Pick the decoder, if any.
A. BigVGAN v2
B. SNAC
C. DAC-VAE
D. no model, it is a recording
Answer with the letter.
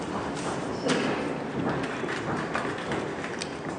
D